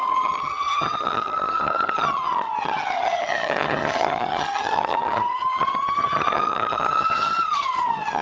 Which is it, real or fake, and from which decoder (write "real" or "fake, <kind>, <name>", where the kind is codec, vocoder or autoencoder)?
fake, vocoder, HiFi-GAN